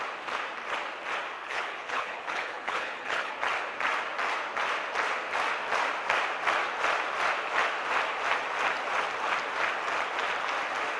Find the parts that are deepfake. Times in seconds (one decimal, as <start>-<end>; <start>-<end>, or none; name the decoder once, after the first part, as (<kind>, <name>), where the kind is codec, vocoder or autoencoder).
1.4-3.3 (codec, HILCodec)